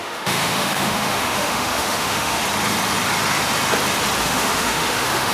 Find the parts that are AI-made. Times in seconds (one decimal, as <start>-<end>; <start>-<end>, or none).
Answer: 0.0-2.4; 4.2-5.3